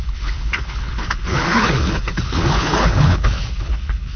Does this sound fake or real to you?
fake